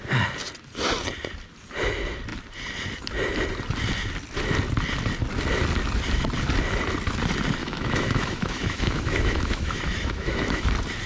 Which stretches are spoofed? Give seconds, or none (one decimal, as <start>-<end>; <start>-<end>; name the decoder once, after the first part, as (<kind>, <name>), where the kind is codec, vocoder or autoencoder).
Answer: 7.6-10.7 (autoencoder, DAC-VAE)